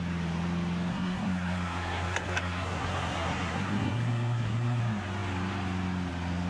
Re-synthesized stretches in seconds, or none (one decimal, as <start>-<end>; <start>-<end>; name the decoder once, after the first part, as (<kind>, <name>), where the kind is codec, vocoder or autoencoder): 0.9-4.8 (codec, SNAC)